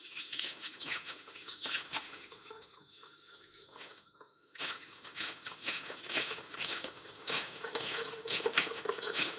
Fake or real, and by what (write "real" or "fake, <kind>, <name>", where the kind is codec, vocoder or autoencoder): fake, autoencoder, DAC-VAE